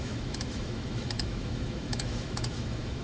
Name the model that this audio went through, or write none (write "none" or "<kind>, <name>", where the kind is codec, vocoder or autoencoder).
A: autoencoder, DAC-VAE